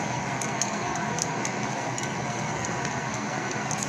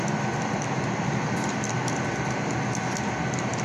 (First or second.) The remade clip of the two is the first